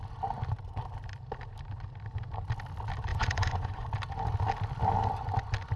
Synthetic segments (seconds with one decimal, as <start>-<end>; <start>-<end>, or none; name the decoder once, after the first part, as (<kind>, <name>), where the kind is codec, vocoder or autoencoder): 3.1-3.9 (vocoder, Vocos)